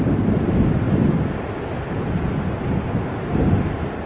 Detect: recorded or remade recorded